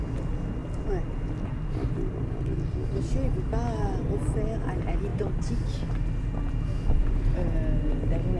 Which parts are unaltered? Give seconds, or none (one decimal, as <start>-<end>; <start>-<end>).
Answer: 0.0-5.1; 5.9-8.4